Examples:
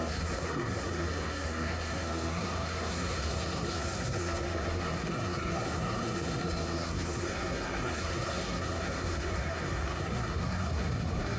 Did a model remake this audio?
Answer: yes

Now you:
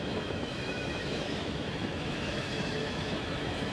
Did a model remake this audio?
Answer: yes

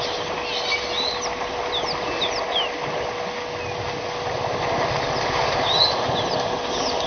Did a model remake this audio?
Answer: no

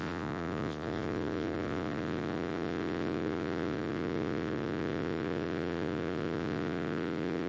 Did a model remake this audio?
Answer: yes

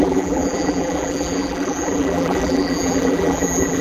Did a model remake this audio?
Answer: yes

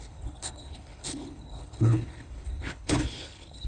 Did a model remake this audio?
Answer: yes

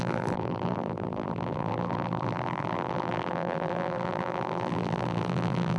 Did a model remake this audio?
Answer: yes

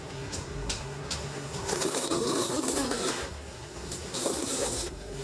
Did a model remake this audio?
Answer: yes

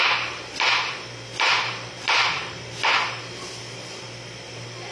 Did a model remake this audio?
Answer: no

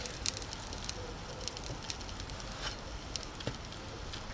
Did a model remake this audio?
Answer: no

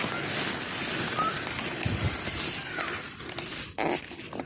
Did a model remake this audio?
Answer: no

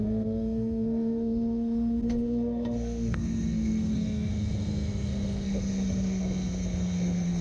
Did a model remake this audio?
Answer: yes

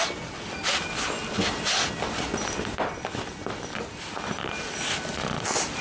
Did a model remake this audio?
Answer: no